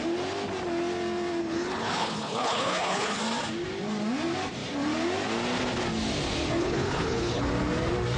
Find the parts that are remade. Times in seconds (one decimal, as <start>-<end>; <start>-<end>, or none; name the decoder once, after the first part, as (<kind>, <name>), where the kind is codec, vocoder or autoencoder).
1.4-3.2 (codec, HILCodec); 6.6-7.4